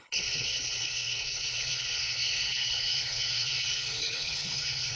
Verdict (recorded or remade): remade